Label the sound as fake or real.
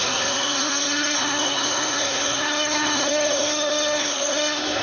fake